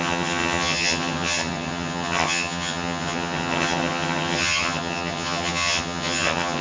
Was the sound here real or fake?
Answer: fake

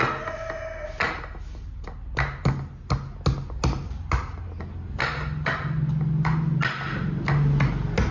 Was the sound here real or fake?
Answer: real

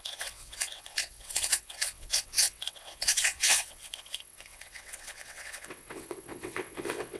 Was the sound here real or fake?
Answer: fake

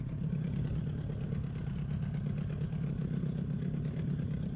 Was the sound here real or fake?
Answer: real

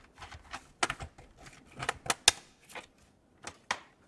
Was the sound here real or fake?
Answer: real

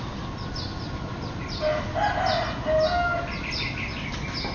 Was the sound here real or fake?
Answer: real